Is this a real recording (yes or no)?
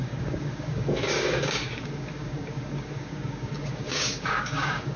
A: no